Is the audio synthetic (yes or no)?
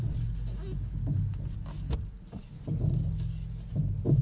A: no